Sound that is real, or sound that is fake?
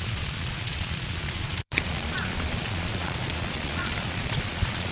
fake